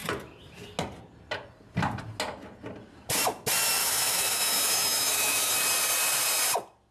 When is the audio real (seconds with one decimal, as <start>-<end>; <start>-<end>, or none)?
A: 0.0-3.8; 5.5-6.9